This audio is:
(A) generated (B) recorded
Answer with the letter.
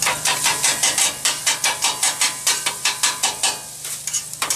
B